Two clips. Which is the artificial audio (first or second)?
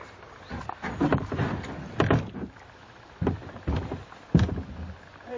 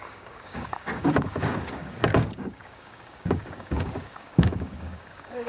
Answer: second